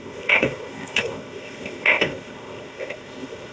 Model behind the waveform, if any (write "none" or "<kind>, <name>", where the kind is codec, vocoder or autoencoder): codec, ZipCodec